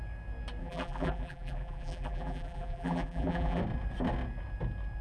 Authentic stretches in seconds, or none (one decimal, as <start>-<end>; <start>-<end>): 0.0-0.6; 3.6-5.0